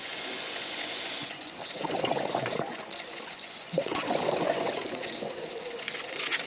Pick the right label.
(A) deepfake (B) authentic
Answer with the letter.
A